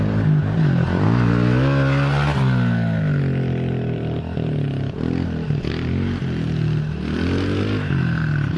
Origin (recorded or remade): recorded